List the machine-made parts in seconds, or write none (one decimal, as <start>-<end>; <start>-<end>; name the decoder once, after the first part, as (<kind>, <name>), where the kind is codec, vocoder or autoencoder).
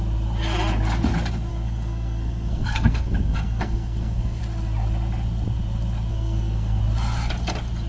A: 1.5-4.4 (codec, SNAC); 6.1-6.8